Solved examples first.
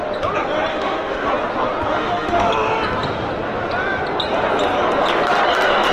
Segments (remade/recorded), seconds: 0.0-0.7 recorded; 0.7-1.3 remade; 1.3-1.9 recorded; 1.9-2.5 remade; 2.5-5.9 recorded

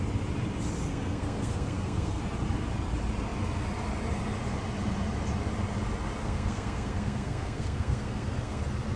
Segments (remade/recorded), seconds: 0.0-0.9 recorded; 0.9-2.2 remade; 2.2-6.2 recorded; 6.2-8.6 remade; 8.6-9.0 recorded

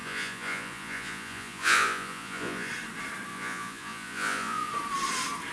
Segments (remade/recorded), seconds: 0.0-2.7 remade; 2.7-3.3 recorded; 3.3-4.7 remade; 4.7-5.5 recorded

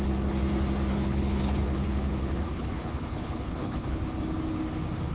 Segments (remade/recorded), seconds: 0.0-0.9 recorded; 0.9-4.0 remade; 4.0-5.1 recorded

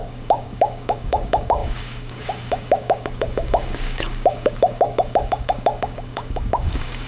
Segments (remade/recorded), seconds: 0.0-7.1 remade

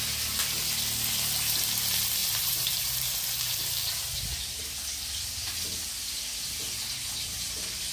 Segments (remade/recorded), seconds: 0.0-2.2 recorded; 2.2-4.6 remade; 4.6-7.9 recorded

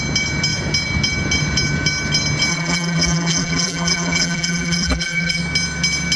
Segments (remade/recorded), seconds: 0.0-2.5 recorded; 2.5-5.4 remade; 5.4-6.2 recorded

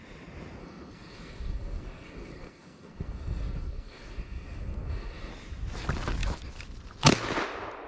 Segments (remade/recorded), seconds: 0.0-0.6 recorded; 0.6-5.3 remade; 5.3-7.9 recorded